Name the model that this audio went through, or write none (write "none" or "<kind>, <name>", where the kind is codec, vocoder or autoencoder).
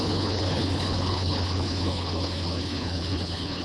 codec, HILCodec